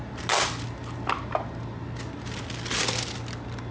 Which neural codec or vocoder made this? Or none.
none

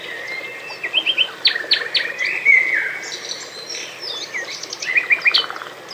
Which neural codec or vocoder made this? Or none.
none